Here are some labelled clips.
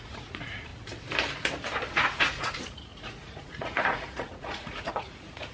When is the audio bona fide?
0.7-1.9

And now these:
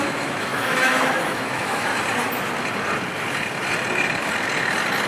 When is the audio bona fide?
1.9-5.1

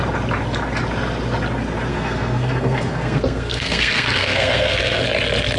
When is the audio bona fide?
0.0-1.9; 5.0-5.6

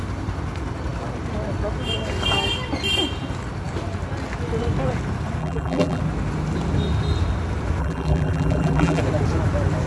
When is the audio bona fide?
0.0-5.4; 6.0-7.8; 9.0-9.9

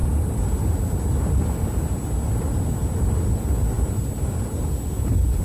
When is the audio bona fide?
0.8-5.4

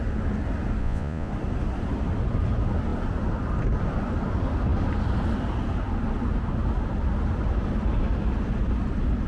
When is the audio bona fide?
0.0-0.8; 1.3-9.3